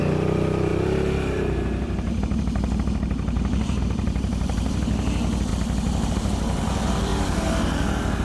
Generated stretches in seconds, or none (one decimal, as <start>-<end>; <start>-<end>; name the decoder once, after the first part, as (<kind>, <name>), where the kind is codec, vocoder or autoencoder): 0.0-5.5 (vocoder, BigVGAN v2); 6.1-7.1

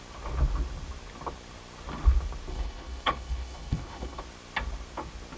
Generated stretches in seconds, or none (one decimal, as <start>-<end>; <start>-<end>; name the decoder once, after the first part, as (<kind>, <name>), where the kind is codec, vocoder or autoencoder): 2.5-4.2 (codec, HILCodec)

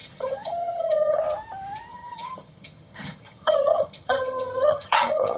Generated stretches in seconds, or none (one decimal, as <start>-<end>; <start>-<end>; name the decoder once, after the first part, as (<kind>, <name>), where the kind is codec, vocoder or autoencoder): 0.0-1.2 (vocoder, HiFi-GAN); 1.9-5.4

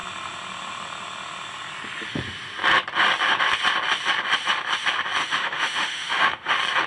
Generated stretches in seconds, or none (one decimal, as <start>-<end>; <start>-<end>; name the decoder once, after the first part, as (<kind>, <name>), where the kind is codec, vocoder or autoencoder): 5.2-6.5 (autoencoder, DAC-VAE)

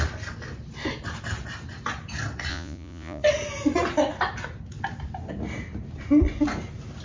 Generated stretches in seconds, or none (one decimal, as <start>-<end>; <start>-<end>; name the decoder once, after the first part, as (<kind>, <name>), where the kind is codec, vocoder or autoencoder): 2.5-3.2 (vocoder, Vocos)

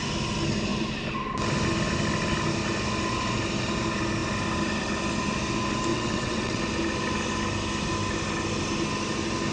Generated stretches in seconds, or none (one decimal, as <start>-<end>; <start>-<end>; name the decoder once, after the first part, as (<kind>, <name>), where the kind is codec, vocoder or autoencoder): 5.9-6.6 (vocoder, WaveNeXt)